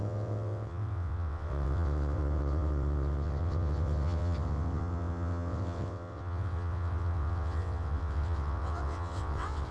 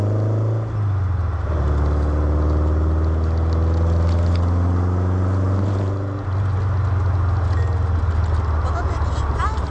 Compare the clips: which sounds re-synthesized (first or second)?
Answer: first